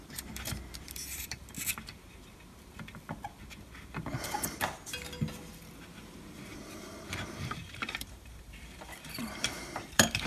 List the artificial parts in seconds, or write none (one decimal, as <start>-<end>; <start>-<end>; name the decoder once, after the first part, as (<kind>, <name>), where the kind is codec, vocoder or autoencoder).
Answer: 0.0-1.4 (vocoder, BigVGAN v2); 6.0-10.3